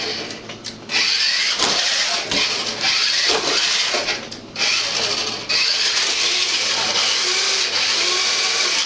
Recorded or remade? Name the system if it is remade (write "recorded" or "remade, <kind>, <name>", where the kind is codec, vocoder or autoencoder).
recorded